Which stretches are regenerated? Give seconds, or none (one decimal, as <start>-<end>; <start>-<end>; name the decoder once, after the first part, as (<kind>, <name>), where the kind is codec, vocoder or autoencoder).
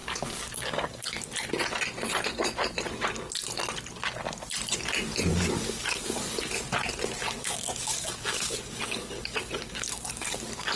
0.0-1.2 (codec, DAC); 5.3-6.5; 7.2-10.8